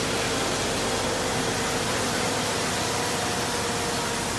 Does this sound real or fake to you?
real